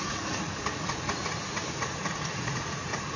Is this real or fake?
fake